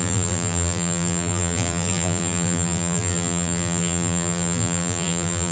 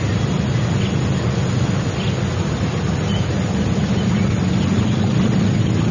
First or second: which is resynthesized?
first